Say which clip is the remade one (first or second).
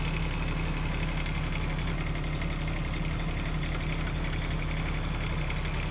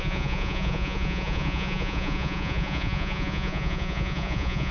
second